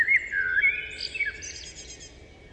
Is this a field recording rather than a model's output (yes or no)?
yes